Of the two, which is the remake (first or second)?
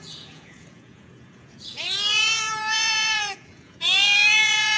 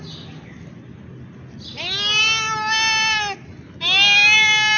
first